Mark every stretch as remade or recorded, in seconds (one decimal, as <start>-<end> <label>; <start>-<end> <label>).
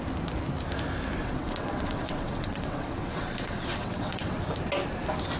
0.0-1.2 recorded; 1.2-4.4 remade; 4.4-5.4 recorded